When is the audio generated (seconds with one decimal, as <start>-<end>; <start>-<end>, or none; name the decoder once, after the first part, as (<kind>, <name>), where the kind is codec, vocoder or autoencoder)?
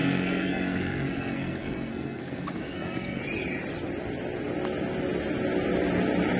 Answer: 0.0-3.2 (codec, SNAC)